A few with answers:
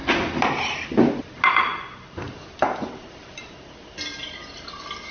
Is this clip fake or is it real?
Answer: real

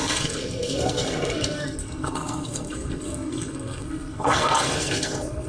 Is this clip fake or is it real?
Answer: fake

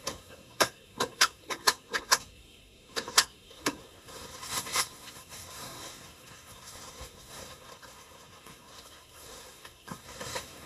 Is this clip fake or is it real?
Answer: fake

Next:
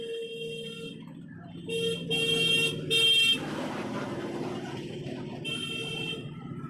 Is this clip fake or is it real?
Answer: real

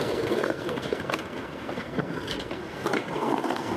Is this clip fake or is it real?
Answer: fake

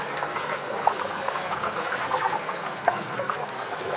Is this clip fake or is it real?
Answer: fake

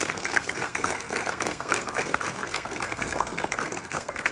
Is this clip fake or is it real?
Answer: fake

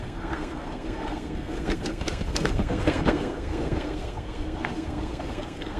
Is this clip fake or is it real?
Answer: fake